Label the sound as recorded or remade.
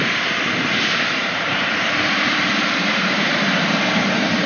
remade